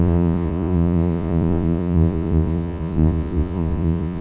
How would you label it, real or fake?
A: fake